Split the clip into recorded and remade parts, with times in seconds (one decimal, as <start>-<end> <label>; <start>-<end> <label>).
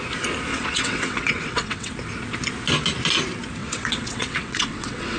0.0-0.5 recorded; 0.5-1.9 remade; 1.9-3.6 recorded; 3.6-5.2 remade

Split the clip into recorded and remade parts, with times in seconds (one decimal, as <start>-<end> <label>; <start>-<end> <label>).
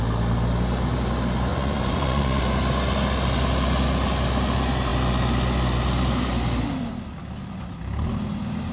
0.0-1.5 recorded; 1.5-2.4 remade; 2.4-8.7 recorded